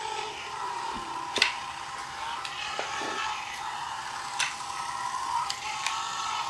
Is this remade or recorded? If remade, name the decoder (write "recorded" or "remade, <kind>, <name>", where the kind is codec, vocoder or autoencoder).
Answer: remade, vocoder, BigVGAN v2